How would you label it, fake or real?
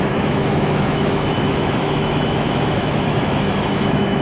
fake